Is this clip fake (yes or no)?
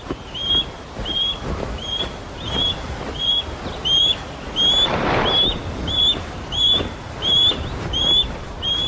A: no